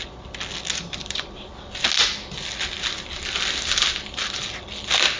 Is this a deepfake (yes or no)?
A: no